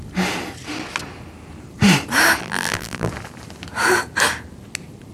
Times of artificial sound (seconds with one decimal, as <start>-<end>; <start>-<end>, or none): 2.4-3.1